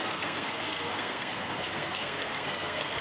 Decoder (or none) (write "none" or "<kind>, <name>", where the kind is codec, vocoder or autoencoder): codec, SNAC